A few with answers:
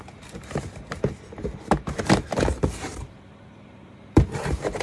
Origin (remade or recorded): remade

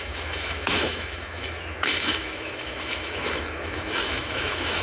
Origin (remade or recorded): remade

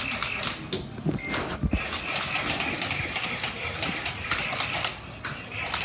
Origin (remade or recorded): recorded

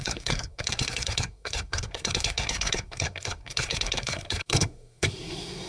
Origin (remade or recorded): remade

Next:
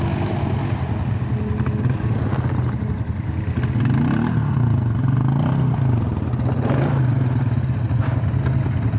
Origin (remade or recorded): recorded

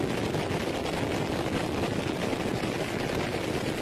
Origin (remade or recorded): recorded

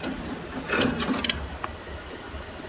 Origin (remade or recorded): recorded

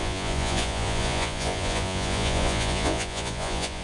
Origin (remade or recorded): remade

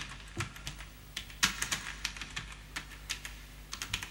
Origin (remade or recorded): recorded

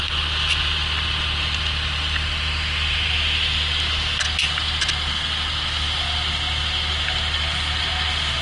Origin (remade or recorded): recorded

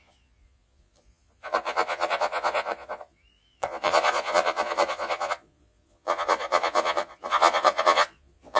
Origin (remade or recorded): remade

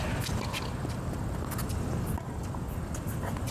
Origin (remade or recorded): recorded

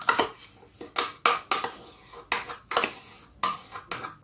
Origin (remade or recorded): recorded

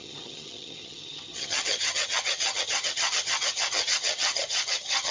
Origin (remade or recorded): remade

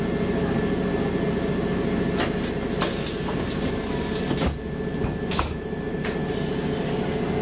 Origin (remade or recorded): recorded